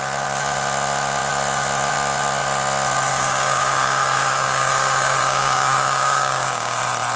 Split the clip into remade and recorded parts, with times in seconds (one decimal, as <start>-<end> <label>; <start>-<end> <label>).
0.0-3.1 recorded; 3.1-6.8 remade; 6.8-7.2 recorded